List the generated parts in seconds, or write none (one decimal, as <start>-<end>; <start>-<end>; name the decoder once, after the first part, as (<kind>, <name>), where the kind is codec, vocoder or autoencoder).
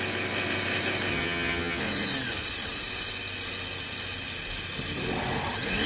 1.1-1.8 (vocoder, HiFi-GAN)